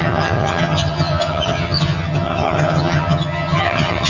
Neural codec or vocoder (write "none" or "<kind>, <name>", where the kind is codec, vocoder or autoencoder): vocoder, HiFi-GAN